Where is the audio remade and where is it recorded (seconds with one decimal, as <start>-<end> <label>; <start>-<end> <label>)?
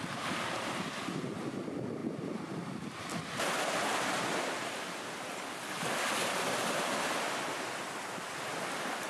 0.0-9.1 recorded